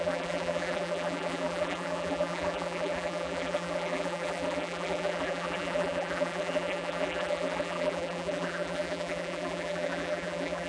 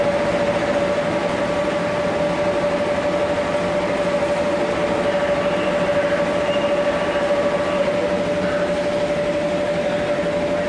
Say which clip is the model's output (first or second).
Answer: first